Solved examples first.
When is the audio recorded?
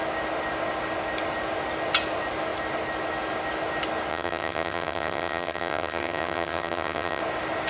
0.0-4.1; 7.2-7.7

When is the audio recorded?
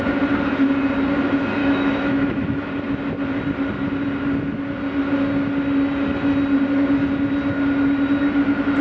0.0-1.6; 2.7-8.8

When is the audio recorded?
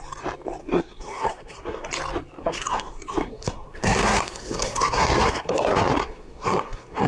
0.0-0.6; 1.9-2.4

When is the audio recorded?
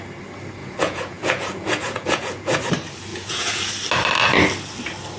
0.0-0.6; 2.7-3.1; 3.7-5.2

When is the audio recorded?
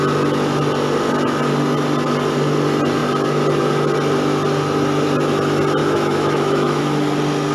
0.0-5.8; 6.8-7.5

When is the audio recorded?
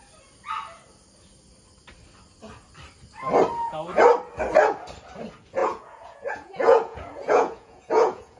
0.0-5.6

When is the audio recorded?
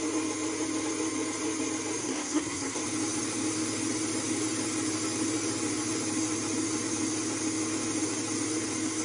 0.0-2.0; 2.8-9.0